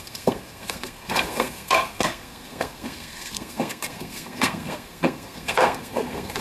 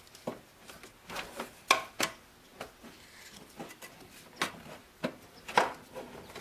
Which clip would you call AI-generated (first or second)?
first